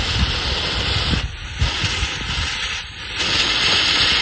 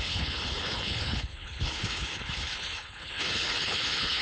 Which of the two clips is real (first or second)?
first